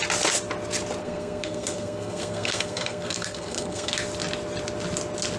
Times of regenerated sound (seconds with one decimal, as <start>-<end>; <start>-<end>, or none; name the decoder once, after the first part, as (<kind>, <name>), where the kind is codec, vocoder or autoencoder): 1.0-3.9 (codec, SNAC)